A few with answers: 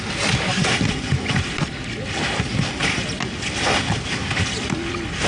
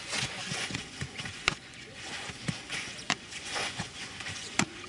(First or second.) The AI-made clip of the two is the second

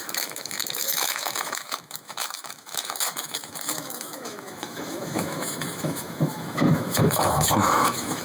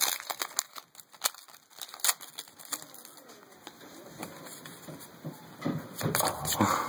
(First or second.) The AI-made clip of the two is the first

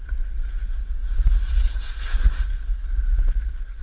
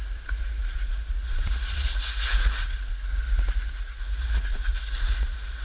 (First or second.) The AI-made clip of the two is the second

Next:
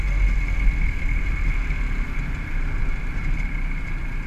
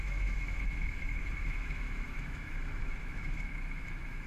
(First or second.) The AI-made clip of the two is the second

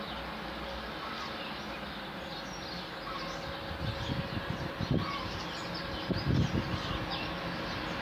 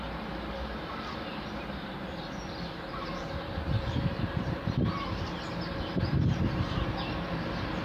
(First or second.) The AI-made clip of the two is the second